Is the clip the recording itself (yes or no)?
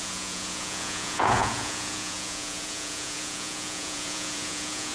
no